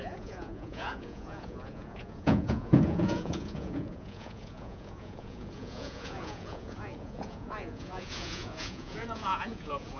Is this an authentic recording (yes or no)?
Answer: no